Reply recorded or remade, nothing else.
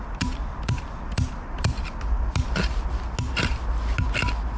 recorded